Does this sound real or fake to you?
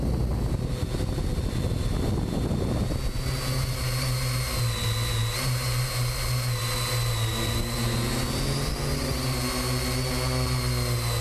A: real